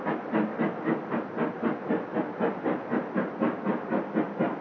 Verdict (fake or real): real